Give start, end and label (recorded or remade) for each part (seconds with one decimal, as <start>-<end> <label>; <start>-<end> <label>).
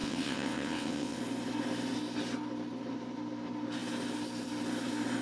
0.0-1.2 remade; 1.2-5.2 recorded